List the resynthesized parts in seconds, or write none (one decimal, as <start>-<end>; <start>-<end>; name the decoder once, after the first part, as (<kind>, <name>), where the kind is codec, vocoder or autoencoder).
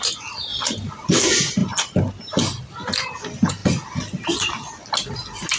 0.0-1.6 (vocoder, BigVGAN v2); 2.7-3.6